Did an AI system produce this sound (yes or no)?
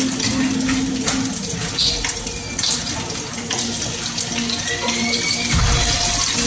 no